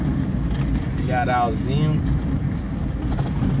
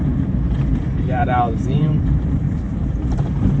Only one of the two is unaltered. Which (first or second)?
first